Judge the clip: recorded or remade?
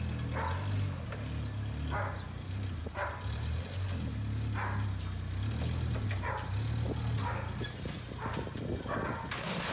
recorded